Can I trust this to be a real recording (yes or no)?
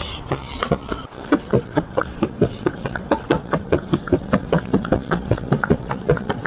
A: no